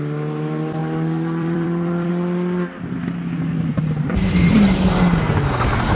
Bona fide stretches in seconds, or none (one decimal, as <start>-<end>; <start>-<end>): 0.0-0.8; 2.1-5.9